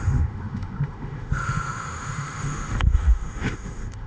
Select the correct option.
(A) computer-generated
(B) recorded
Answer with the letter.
A